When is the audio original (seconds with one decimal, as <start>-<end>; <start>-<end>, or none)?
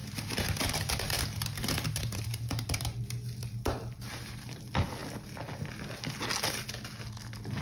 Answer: 4.6-7.6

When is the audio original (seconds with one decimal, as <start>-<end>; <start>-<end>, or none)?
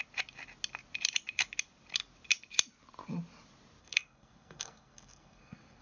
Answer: 0.0-3.8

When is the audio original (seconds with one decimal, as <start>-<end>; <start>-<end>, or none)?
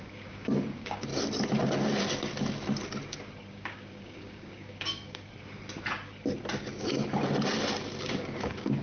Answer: 1.1-3.5; 5.3-8.0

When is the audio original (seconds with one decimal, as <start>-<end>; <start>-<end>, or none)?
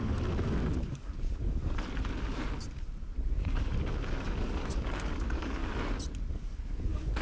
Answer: 1.6-3.4; 5.6-6.3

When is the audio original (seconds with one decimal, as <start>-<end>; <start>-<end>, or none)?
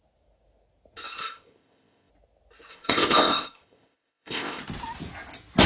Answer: 0.0-1.2; 2.1-2.7; 4.6-5.7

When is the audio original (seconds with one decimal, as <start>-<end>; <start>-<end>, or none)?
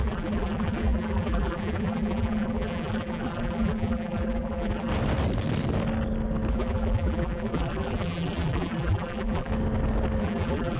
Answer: 4.9-6.5; 9.5-10.2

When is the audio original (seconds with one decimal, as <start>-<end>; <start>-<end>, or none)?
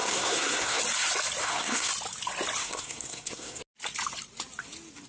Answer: 0.8-1.4; 1.9-2.6; 3.6-5.1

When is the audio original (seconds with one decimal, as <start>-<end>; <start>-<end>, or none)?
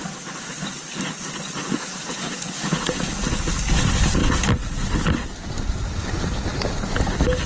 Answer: 0.0-1.6; 3.1-7.5